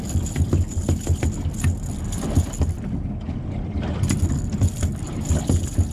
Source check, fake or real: real